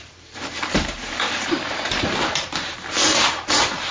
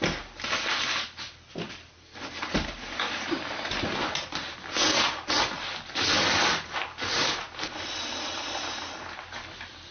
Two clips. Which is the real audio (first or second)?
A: second